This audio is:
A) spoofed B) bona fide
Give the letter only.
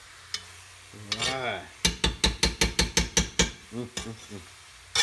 B